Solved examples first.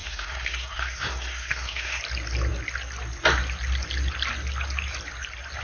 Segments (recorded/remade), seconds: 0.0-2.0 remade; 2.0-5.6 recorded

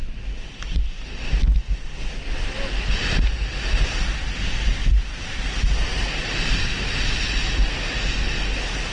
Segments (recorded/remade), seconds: 0.0-8.9 recorded

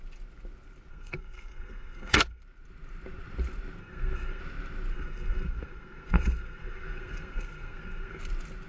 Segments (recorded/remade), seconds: 0.0-0.9 recorded; 0.9-2.4 remade; 2.4-3.8 recorded; 3.8-4.4 remade; 4.4-4.9 recorded; 4.9-8.2 remade; 8.2-8.7 recorded

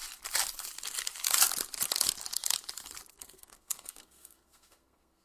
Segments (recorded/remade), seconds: 0.0-3.1 recorded; 3.1-5.2 remade

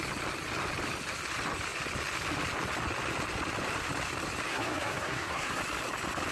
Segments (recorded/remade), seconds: 0.0-4.5 recorded; 4.5-5.6 remade; 5.6-6.3 recorded

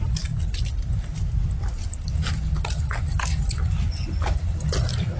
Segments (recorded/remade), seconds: 0.0-5.2 recorded